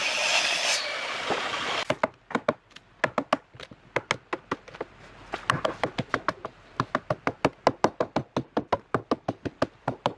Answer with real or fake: real